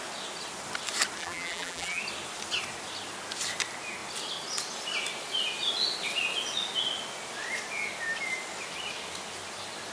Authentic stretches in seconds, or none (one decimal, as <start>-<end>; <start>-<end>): 0.0-1.2; 2.0-9.9